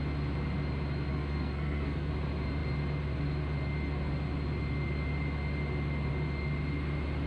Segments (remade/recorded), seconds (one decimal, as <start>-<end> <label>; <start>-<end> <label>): 0.0-1.1 recorded; 1.1-2.1 remade; 2.1-7.3 recorded